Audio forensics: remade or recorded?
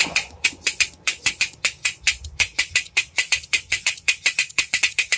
remade